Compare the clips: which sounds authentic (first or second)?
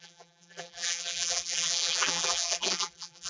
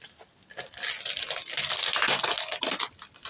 second